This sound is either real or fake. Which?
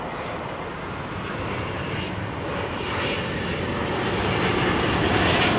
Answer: real